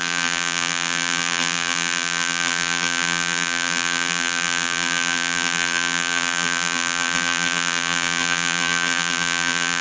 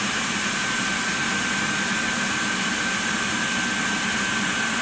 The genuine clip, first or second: second